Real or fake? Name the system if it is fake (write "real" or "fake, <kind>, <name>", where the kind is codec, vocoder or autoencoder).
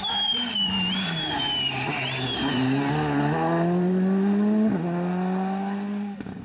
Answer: real